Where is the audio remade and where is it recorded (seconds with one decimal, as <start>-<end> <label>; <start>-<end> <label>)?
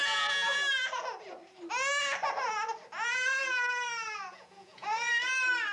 0.0-4.3 recorded; 4.3-5.1 remade; 5.1-5.7 recorded